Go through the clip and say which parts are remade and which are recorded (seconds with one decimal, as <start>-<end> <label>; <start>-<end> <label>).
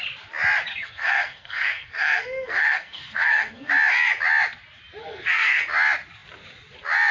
0.0-0.7 recorded; 0.7-3.7 remade; 3.7-5.0 recorded; 5.0-5.6 remade; 5.6-7.1 recorded